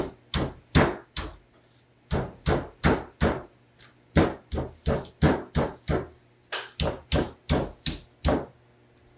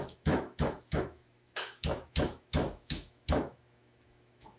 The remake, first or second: second